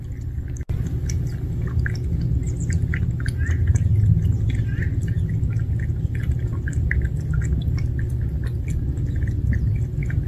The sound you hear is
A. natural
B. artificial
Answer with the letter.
A